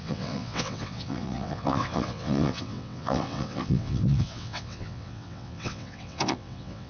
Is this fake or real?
fake